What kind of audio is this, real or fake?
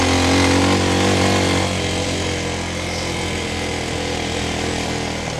real